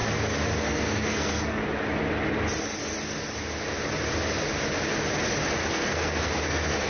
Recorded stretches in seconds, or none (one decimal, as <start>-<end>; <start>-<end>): 0.0-0.6; 1.6-5.7